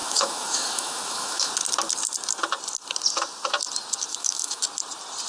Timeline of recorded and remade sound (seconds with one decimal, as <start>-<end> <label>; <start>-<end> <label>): 0.0-1.5 remade; 1.5-4.1 recorded; 4.1-4.6 remade; 4.6-5.3 recorded